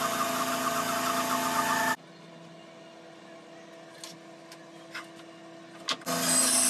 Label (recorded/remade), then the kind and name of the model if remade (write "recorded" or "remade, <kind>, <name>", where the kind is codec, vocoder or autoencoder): recorded